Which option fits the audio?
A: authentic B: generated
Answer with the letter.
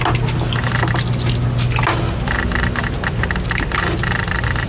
A